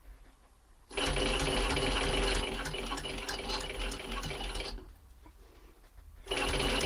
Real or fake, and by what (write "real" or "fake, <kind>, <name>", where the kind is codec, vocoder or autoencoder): real